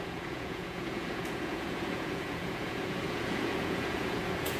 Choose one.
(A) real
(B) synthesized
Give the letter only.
B